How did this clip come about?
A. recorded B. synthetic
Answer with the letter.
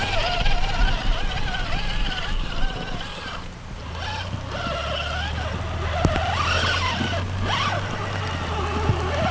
A